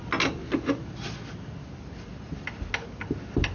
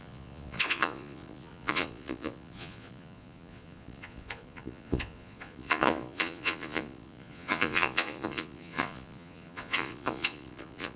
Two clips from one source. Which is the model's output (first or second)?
second